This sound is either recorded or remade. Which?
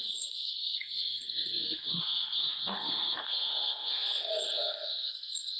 remade